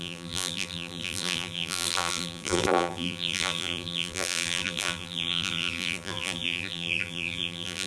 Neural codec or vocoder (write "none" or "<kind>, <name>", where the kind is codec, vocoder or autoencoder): vocoder, BigVGAN v2